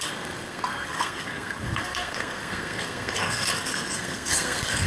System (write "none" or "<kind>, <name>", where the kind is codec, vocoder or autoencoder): codec, SNAC